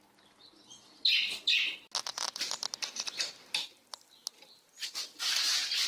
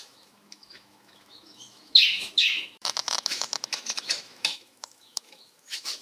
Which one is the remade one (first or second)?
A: second